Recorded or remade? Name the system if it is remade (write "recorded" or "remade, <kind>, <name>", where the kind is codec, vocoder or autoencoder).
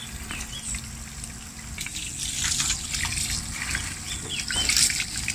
recorded